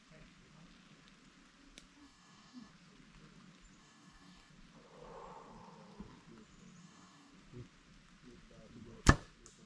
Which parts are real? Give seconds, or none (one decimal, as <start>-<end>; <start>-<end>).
0.0-2.0; 2.7-3.8; 4.5-6.8; 7.3-9.7